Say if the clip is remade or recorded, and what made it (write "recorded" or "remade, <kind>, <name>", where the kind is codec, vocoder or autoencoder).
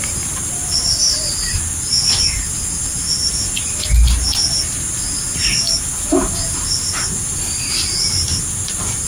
recorded